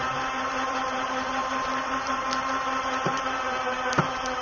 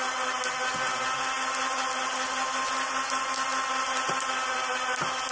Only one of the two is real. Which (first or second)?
second